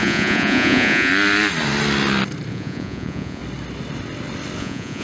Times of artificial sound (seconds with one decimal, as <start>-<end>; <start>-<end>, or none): 0.0-1.1; 2.5-3.4; 4.6-5.0